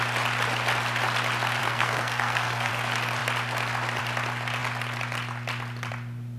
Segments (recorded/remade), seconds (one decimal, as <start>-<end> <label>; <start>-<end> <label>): 0.0-1.6 recorded; 1.6-2.7 remade; 2.7-6.4 recorded